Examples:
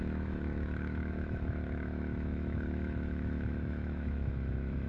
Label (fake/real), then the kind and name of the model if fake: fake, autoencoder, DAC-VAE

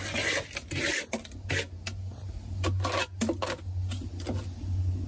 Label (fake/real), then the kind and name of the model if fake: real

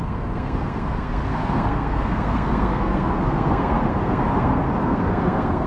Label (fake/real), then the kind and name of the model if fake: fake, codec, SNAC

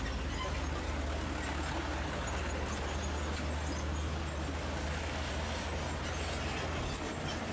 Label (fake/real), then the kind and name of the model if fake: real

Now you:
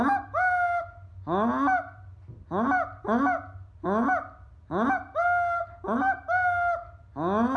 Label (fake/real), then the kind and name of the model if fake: real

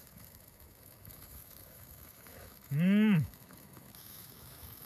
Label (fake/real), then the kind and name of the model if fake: fake, autoencoder, DAC-VAE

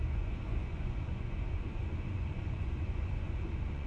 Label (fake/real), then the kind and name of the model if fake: fake, vocoder, Vocos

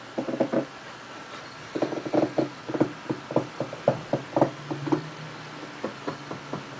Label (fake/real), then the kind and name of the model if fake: real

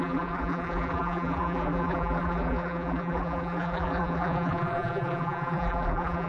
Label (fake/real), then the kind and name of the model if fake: fake, vocoder, BigVGAN v2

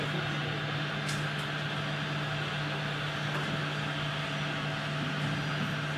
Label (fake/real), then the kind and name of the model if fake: real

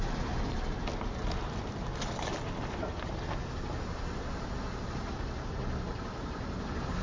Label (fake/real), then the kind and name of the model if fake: real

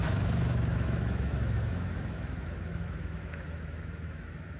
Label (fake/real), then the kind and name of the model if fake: fake, autoencoder, DAC-VAE